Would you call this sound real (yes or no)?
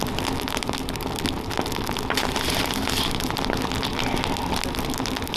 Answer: yes